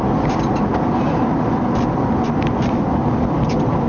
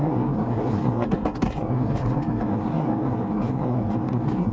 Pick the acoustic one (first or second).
first